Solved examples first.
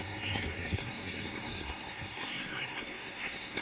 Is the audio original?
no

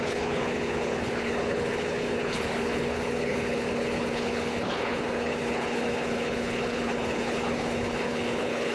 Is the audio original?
no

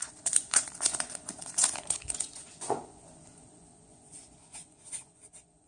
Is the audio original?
no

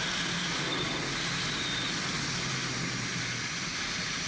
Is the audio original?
yes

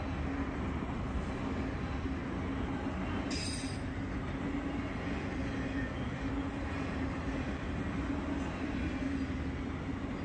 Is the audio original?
yes